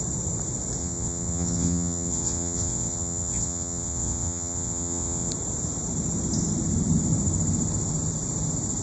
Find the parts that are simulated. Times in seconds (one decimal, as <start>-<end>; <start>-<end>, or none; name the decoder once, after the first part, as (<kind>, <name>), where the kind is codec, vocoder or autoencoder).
0.8-5.3 (vocoder, WaveNeXt)